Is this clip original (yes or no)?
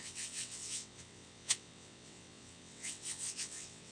no